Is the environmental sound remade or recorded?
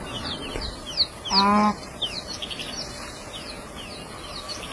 recorded